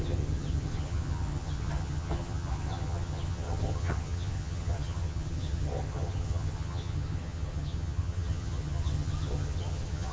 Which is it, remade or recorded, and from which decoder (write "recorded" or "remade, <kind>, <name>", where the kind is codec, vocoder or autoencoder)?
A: remade, vocoder, HiFi-GAN